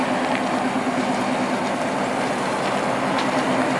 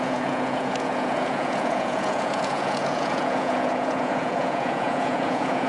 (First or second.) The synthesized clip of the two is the second